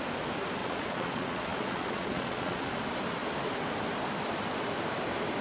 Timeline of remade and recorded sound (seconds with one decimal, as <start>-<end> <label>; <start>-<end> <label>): 0.0-0.6 recorded; 0.6-2.7 remade; 2.7-5.4 recorded